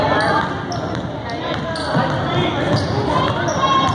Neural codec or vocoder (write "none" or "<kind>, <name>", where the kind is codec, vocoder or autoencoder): none